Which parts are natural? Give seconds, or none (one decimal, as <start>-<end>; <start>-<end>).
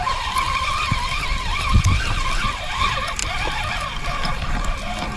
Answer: 1.3-2.0; 3.2-5.2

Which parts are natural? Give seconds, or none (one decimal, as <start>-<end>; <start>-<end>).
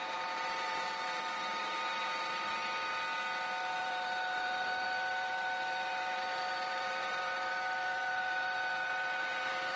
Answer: 2.6-3.8